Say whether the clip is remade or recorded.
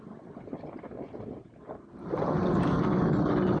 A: recorded